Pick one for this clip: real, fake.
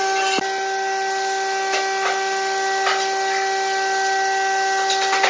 real